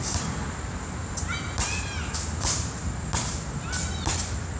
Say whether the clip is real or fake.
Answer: real